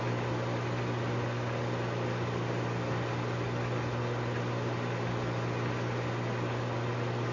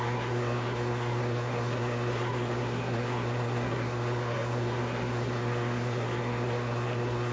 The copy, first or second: second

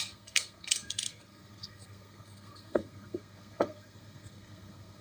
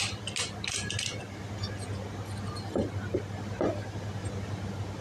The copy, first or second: first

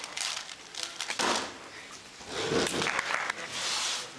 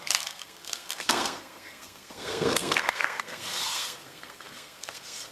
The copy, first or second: second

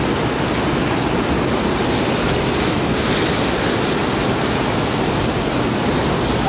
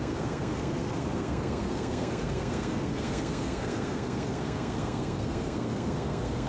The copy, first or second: second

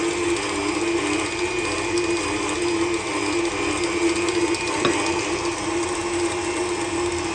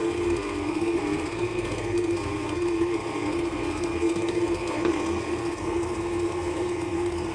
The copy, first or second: second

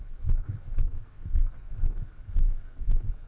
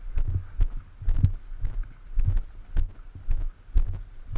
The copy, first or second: first